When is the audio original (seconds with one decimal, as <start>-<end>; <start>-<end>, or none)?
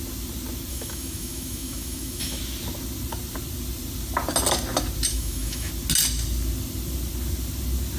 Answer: 0.0-0.7; 2.4-5.1; 5.7-8.0